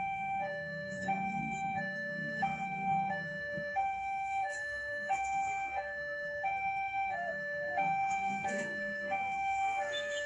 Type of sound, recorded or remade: remade